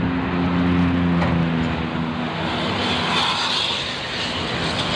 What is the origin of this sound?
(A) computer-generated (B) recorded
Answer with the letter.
B